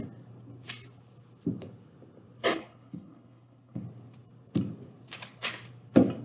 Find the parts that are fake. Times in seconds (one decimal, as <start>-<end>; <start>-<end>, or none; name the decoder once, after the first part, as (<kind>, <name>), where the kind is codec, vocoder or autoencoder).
2.5-3.8 (codec, HILCodec)